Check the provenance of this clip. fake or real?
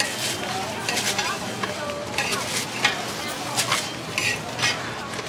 real